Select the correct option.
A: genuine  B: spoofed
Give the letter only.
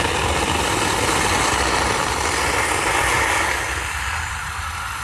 A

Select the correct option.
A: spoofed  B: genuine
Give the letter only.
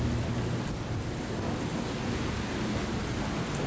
B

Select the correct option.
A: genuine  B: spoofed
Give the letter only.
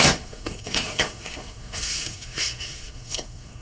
B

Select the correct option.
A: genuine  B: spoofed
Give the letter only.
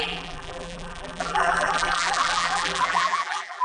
B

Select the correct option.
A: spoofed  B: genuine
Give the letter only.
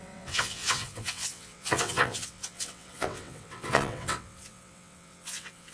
A